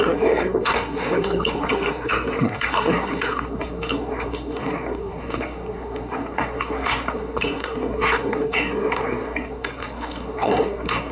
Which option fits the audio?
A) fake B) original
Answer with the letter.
A